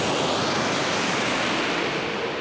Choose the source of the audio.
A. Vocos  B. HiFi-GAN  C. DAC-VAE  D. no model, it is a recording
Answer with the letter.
D